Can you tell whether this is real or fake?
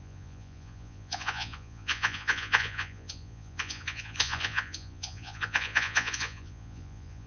fake